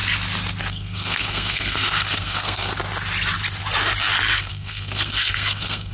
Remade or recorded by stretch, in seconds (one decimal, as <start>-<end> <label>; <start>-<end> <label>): 0.0-0.7 recorded; 0.7-2.7 remade; 2.7-4.4 recorded; 4.4-5.9 remade